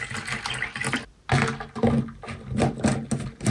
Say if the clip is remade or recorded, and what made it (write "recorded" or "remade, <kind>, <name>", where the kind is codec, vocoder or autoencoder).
recorded